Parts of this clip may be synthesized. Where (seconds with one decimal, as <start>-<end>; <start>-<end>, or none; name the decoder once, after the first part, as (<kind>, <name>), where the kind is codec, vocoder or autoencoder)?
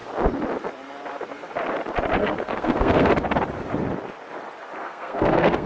2.2-3.1 (codec, SNAC); 4.8-5.7